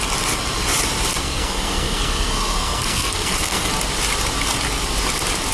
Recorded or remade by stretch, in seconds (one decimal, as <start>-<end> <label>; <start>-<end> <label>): 0.0-1.1 recorded; 1.1-3.7 remade; 3.7-5.5 recorded